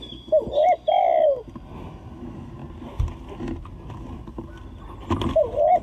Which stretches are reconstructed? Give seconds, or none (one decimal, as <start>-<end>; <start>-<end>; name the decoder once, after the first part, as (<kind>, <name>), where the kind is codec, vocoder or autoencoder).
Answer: none